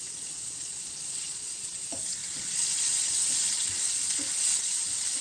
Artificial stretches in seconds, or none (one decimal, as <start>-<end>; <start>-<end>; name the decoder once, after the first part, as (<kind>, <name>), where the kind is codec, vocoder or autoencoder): 0.0-5.2 (vocoder, Vocos)